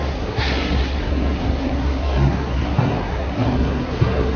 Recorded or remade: remade